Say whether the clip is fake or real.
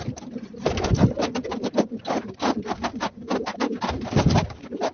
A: real